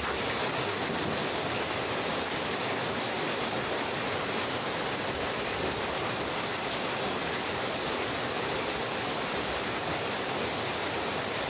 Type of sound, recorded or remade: recorded